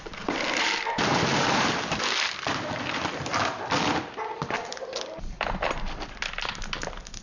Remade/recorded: recorded